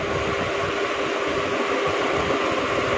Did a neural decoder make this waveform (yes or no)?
no